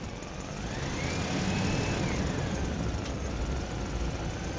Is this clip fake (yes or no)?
no